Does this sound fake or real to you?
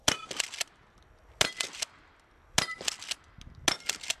real